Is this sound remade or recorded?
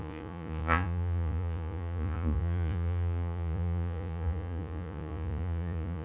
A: remade